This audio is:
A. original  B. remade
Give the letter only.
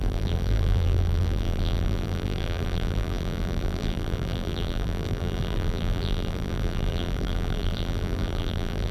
B